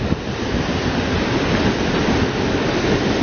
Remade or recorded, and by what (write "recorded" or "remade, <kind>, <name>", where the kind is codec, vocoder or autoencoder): recorded